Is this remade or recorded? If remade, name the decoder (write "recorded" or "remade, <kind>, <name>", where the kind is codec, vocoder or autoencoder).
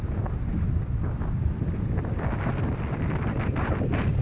recorded